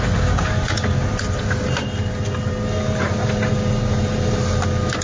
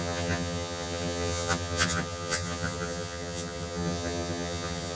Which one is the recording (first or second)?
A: first